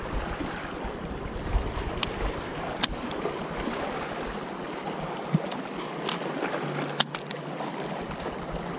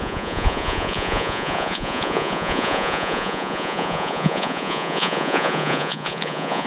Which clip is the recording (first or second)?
first